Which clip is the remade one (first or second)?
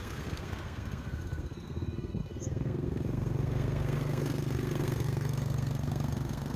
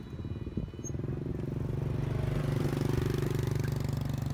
first